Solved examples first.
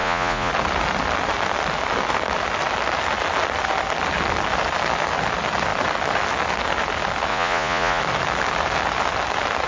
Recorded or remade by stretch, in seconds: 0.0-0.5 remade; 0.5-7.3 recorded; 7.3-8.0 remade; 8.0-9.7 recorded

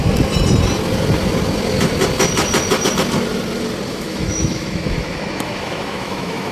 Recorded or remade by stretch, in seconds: 0.0-3.9 recorded; 3.9-6.5 remade

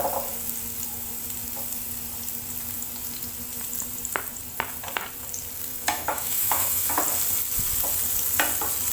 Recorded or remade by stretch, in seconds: 0.0-5.7 recorded; 5.7-6.9 remade; 6.9-8.9 recorded

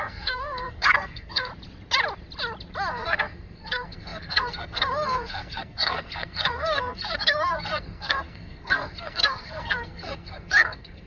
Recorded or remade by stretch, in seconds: 0.0-1.5 remade; 1.5-2.9 recorded; 2.9-11.1 remade

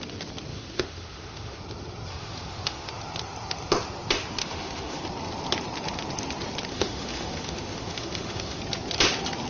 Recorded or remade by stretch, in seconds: 0.0-0.5 recorded; 0.5-1.6 remade; 1.6-2.1 recorded; 2.1-2.9 remade; 2.9-4.4 recorded; 4.4-5.0 remade; 5.0-6.7 recorded; 6.7-8.6 remade; 8.6-9.5 recorded

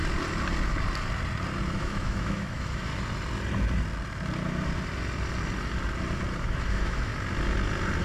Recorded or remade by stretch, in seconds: 0.0-1.8 recorded; 1.8-2.9 remade; 2.9-6.4 recorded; 6.4-7.1 remade; 7.1-8.0 recorded

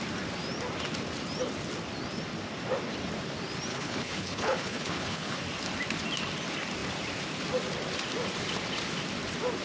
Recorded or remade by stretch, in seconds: 0.0-3.7 recorded; 3.7-5.4 remade; 5.4-9.6 recorded

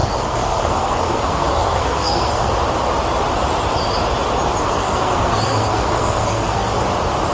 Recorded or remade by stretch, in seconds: 0.0-2.5 remade; 2.5-4.6 recorded; 4.6-6.7 remade; 6.7-7.3 recorded